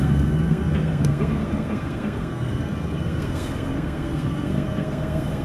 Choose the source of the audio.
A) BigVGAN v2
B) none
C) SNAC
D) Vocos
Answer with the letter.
C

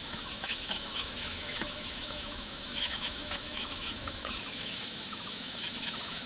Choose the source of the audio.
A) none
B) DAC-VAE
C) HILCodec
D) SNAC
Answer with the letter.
B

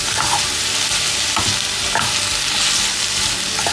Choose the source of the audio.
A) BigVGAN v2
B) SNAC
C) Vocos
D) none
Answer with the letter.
D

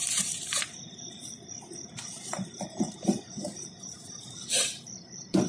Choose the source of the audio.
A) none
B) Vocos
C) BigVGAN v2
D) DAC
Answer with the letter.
C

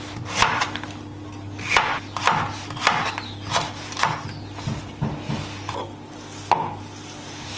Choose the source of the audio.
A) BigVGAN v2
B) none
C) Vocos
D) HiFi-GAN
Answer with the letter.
B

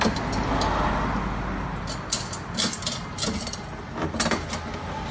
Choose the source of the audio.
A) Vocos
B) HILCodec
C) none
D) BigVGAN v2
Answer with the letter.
C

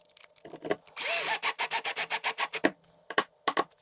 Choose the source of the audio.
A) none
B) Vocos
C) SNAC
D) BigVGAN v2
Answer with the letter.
A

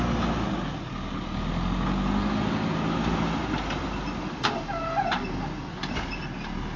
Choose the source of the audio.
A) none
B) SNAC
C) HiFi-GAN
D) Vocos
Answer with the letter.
A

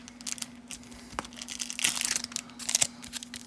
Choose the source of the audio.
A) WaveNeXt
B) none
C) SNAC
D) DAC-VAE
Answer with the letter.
B